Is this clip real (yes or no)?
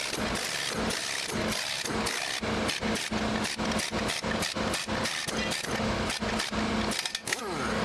yes